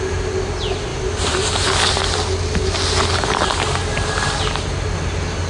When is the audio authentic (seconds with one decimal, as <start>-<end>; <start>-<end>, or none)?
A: 0.0-0.9; 1.9-5.5